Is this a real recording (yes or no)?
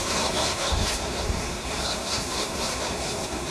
no